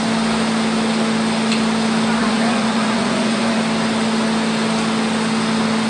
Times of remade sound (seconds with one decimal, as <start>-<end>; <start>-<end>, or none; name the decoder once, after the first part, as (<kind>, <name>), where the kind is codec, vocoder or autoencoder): 2.2-3.6 (vocoder, Vocos)